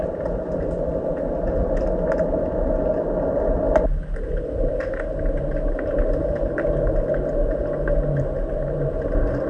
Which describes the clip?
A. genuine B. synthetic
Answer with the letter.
A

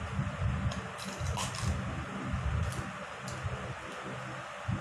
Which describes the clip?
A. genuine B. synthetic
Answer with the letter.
A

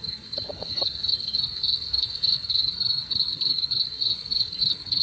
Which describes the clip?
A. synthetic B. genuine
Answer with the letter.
A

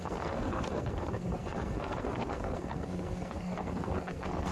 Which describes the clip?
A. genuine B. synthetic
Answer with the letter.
B